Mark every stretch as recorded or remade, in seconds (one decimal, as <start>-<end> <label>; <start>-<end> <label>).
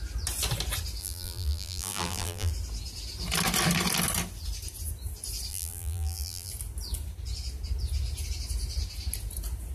0.0-1.0 recorded; 1.0-2.5 remade; 2.5-5.5 recorded; 5.5-6.5 remade; 6.5-9.7 recorded